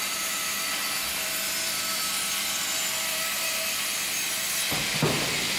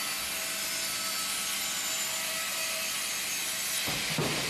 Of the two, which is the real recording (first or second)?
second